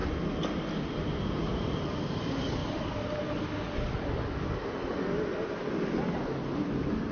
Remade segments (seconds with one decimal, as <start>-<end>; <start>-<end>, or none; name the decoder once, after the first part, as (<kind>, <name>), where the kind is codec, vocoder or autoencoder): none